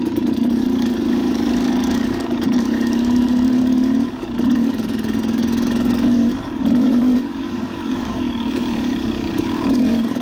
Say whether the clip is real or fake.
fake